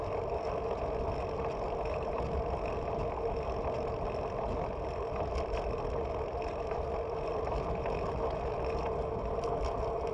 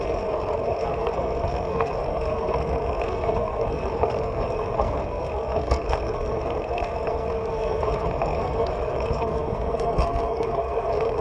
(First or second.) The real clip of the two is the first